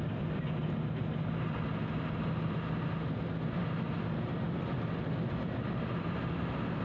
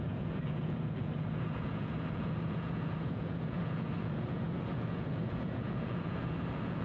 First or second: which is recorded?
first